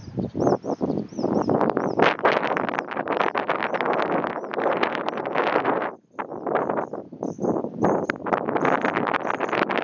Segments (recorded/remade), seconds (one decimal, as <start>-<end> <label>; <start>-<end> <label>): 0.0-6.3 recorded; 6.3-7.2 remade; 7.2-9.8 recorded